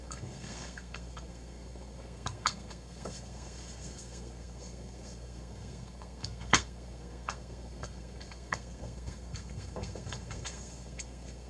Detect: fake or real fake